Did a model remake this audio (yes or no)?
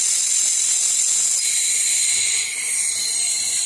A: no